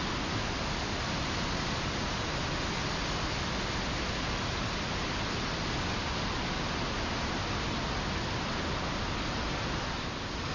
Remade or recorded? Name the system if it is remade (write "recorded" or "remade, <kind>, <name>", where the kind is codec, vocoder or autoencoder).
recorded